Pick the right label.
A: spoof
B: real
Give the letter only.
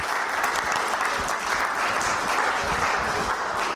B